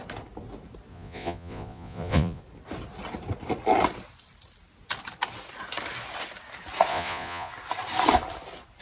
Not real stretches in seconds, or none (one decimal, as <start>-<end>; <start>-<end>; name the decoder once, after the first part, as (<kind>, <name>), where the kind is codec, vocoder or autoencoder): 0.9-2.4 (vocoder, Vocos); 6.9-7.5